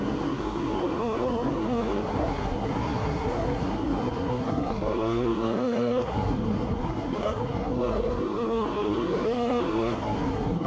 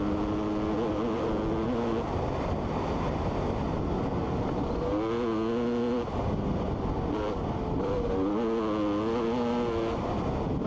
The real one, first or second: second